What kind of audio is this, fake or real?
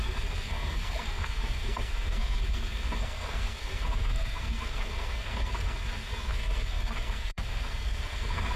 fake